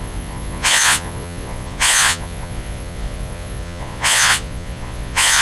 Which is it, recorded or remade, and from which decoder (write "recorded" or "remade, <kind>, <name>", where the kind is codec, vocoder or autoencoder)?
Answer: remade, vocoder, Vocos